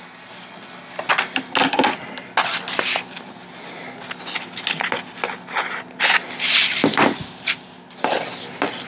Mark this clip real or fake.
real